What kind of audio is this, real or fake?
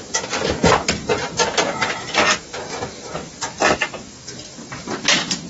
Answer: real